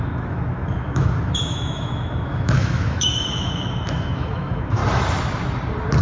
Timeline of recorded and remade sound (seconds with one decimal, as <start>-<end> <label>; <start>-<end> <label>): 0.0-4.8 remade; 4.8-6.0 recorded